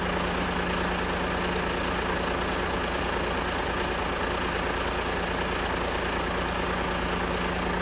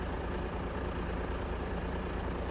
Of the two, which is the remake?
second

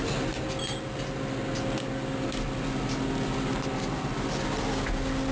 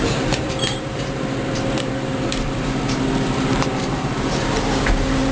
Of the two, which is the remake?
second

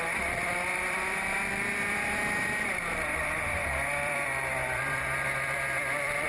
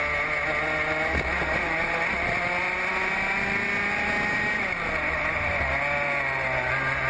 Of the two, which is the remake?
first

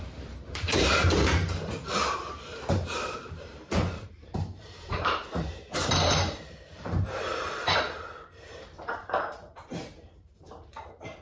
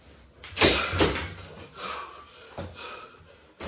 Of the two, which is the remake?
first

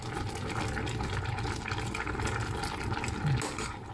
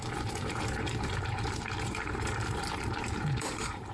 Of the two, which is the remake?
second